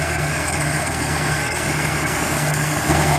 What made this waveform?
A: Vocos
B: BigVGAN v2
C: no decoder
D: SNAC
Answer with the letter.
D